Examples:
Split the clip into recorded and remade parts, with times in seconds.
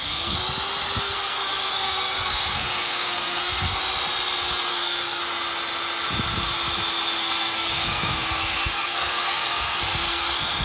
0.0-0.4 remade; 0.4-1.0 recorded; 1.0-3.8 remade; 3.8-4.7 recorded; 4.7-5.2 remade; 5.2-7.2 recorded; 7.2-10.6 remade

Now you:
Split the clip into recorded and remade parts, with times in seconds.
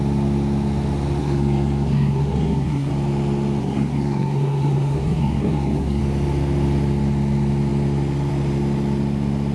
0.0-1.2 recorded; 1.2-2.9 remade; 2.9-3.6 recorded; 3.6-6.0 remade; 6.0-9.5 recorded